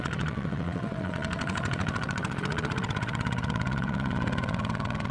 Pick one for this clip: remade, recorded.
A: remade